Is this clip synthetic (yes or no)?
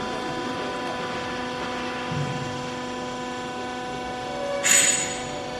no